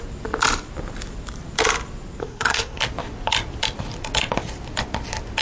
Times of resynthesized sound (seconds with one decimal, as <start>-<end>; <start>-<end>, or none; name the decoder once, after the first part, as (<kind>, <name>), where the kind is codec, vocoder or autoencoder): 2.2-2.8 (codec, SNAC)